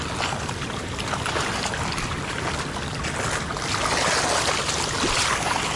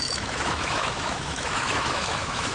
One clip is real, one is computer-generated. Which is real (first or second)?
first